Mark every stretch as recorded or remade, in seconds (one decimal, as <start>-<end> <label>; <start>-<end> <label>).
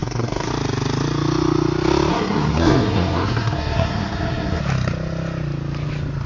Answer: 0.0-0.5 remade; 0.5-2.1 recorded; 2.1-4.6 remade; 4.6-6.3 recorded